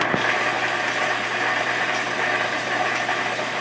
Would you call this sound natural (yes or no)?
no